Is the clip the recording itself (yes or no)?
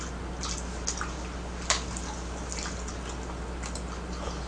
yes